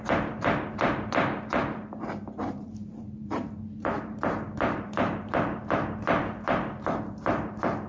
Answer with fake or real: fake